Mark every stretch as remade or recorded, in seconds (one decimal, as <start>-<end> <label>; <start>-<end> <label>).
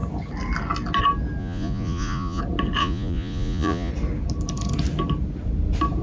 0.0-1.4 recorded; 1.4-2.4 remade; 2.4-2.8 recorded; 2.8-3.9 remade; 3.9-6.0 recorded